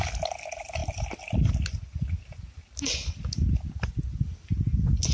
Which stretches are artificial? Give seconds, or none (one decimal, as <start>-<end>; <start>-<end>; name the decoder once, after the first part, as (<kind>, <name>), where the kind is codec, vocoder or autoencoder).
none